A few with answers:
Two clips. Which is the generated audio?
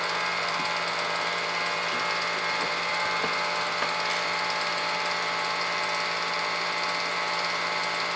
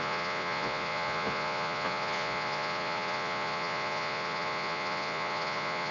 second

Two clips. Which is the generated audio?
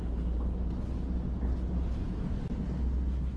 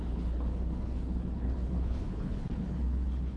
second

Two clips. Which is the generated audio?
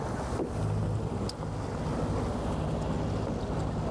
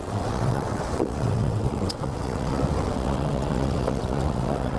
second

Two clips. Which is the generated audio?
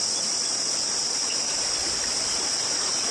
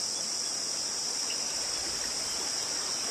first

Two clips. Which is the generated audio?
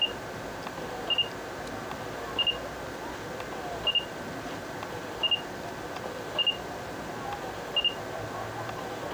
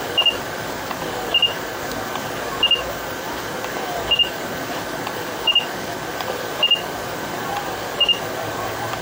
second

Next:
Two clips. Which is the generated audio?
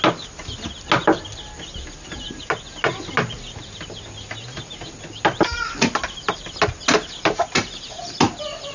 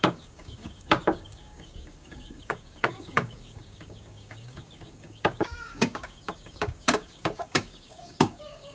second